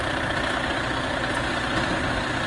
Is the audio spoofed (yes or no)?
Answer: no